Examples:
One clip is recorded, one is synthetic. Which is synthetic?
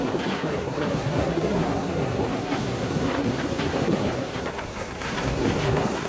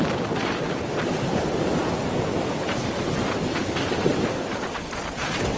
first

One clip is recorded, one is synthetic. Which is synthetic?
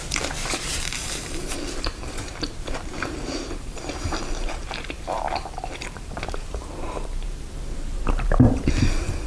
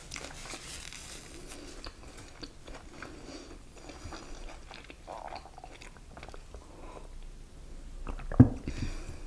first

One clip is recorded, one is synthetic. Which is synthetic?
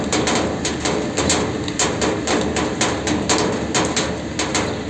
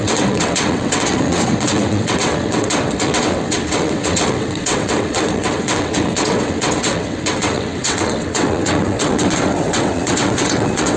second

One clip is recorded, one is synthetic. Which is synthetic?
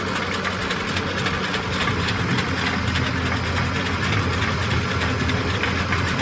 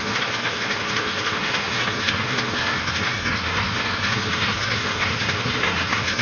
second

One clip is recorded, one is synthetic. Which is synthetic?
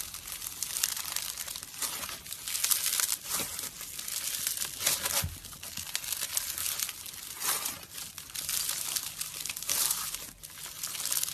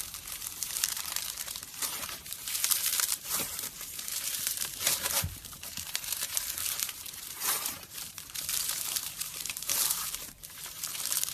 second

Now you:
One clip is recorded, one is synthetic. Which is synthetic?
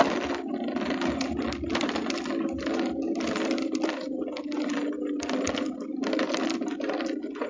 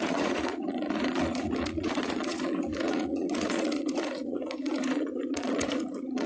second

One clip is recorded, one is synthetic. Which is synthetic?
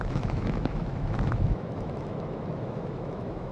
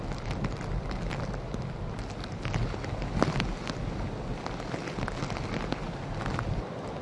first